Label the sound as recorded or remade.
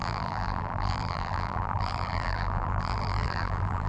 remade